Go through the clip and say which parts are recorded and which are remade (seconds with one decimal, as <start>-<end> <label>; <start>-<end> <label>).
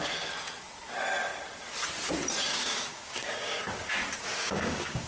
0.0-2.5 recorded; 2.5-3.9 remade; 3.9-4.3 recorded; 4.3-5.1 remade